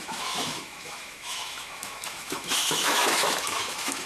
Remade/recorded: remade